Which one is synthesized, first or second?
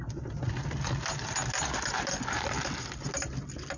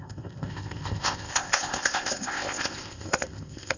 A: second